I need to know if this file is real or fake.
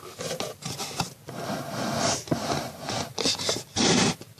real